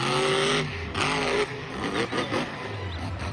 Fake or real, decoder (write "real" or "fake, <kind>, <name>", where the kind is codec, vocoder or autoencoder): real